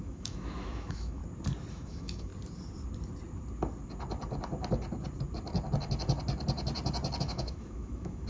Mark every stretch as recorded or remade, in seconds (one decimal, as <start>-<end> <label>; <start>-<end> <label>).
0.0-1.2 remade; 1.2-1.7 recorded; 1.7-2.3 remade; 2.3-7.2 recorded; 7.2-8.3 remade